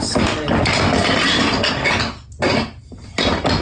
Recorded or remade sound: recorded